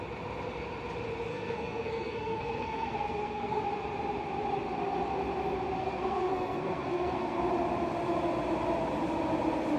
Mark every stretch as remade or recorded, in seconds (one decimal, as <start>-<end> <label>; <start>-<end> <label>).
0.0-1.3 recorded; 1.3-3.6 remade; 3.6-5.8 recorded; 5.8-7.5 remade; 7.5-9.8 recorded